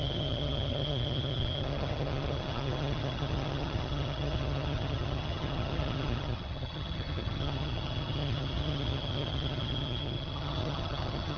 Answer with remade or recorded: remade